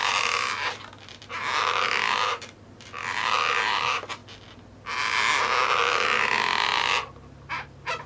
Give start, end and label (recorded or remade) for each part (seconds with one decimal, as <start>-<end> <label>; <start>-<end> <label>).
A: 0.0-4.2 remade; 4.2-5.4 recorded; 5.4-6.7 remade; 6.7-7.5 recorded; 7.5-8.1 remade